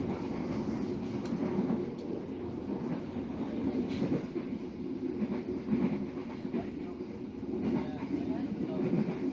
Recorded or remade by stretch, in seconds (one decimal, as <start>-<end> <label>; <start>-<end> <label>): 0.0-9.3 recorded